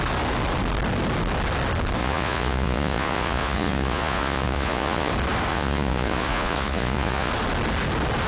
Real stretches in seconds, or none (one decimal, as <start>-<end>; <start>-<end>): 0.0-2.0; 5.1-5.5; 7.3-8.3